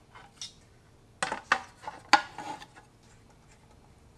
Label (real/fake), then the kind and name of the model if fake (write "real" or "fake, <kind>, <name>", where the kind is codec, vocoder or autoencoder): real